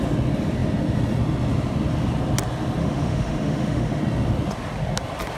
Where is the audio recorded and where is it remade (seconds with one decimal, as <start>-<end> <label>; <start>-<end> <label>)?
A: 0.0-2.8 recorded; 2.8-4.0 remade; 4.0-5.4 recorded